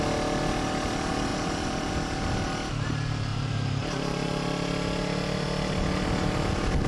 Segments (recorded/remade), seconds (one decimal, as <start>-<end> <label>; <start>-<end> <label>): 0.0-1.3 recorded; 1.3-1.9 remade; 1.9-3.3 recorded; 3.3-4.3 remade; 4.3-6.9 recorded